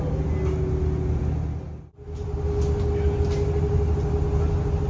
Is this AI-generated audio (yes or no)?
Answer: no